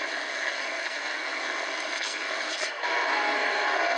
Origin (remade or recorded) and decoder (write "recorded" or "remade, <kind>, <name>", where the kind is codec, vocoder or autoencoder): remade, codec, SNAC